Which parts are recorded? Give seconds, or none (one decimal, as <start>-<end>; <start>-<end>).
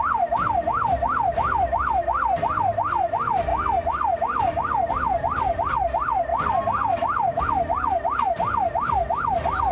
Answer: 0.0-9.7